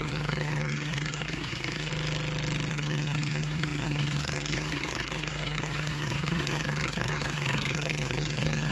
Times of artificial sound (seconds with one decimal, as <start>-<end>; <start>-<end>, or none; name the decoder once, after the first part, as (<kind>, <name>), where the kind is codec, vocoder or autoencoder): 0.0-1.9 (codec, SNAC); 2.7-8.7